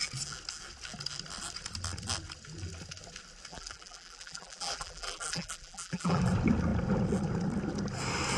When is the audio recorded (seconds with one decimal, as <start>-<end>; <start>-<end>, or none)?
0.0-3.5; 6.2-8.4